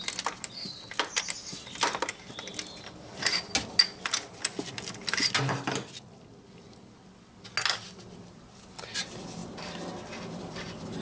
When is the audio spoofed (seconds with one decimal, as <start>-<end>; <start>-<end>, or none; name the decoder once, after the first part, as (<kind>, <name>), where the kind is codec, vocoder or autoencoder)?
none